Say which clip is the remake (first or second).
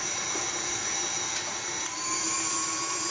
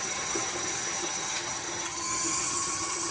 second